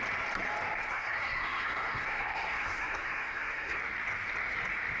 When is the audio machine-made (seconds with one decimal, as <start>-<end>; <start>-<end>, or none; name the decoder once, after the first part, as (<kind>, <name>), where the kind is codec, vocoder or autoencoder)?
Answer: 0.8-3.8 (codec, SNAC)